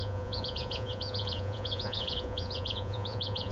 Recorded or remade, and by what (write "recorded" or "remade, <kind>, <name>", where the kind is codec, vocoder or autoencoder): remade, vocoder, Vocos